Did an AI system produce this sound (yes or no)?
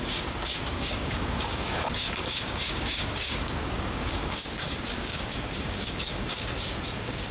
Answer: yes